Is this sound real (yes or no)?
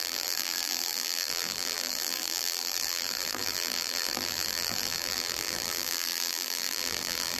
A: no